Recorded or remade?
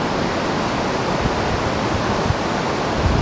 recorded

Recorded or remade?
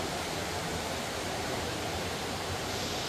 remade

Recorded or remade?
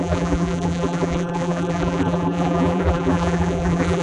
remade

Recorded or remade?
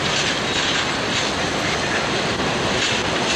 recorded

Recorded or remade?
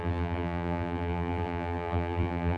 remade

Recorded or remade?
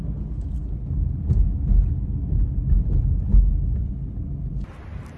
recorded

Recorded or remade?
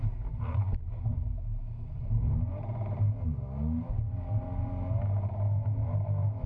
recorded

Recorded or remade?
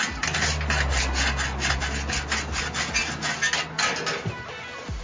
recorded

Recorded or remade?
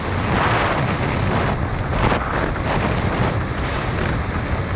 recorded